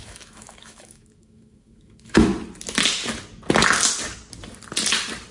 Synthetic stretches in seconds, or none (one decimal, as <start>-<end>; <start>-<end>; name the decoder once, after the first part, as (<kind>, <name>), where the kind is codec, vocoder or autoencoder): 0.0-2.3 (autoencoder, DAC-VAE)